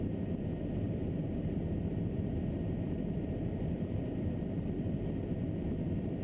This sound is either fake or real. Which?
fake